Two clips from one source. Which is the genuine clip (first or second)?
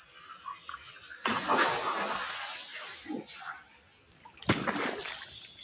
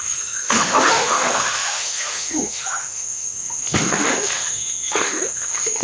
first